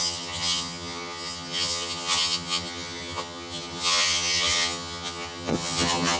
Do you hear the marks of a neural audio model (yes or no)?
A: yes